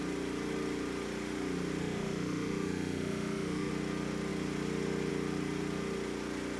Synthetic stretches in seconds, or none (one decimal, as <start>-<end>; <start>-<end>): 1.8-3.7